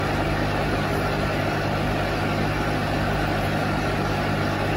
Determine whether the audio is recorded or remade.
recorded